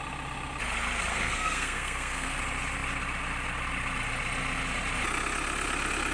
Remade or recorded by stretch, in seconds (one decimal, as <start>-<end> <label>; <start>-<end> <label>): 0.0-1.1 recorded; 1.1-2.4 remade; 2.4-6.1 recorded